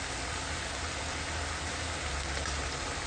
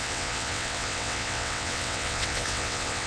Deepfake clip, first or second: second